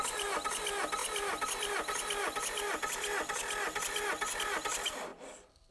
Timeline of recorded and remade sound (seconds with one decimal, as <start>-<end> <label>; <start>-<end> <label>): 0.0-5.7 recorded

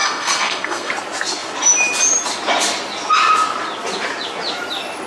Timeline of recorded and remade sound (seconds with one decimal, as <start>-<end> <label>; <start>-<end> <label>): 0.0-0.9 remade; 0.9-5.1 recorded

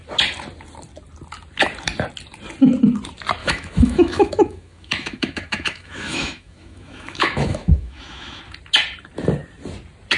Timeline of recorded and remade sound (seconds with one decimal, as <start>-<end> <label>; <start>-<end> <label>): 0.0-3.4 recorded; 3.4-8.4 remade; 8.4-10.2 recorded

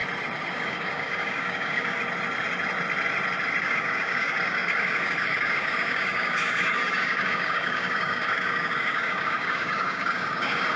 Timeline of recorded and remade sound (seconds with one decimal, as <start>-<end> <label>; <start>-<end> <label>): 0.0-0.5 recorded; 0.5-2.0 remade; 2.0-3.6 recorded; 3.6-10.8 remade

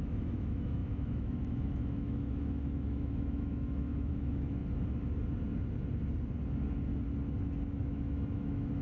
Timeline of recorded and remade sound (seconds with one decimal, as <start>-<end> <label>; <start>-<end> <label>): 0.0-4.6 remade; 4.6-7.8 recorded; 7.8-8.8 remade

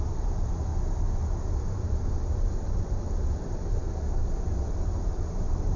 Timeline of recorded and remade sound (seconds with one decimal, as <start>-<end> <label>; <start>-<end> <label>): 0.0-0.7 remade; 0.7-1.7 recorded; 1.7-5.8 remade

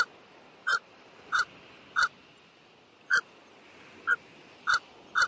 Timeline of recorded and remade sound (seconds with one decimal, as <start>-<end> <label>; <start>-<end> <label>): 0.0-0.6 recorded; 0.6-1.8 remade; 1.8-5.3 recorded

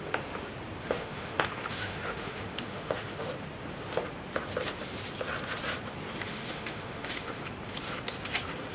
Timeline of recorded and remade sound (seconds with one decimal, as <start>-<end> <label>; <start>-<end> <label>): 0.0-0.8 recorded; 0.8-3.3 remade; 3.3-6.3 recorded; 6.3-7.4 remade; 7.4-8.7 recorded